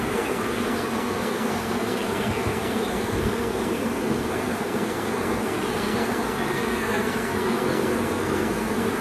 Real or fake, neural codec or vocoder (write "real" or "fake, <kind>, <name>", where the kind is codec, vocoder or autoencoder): fake, codec, SNAC